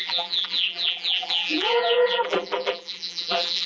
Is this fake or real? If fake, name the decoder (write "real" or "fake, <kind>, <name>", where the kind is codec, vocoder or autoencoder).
fake, vocoder, BigVGAN v2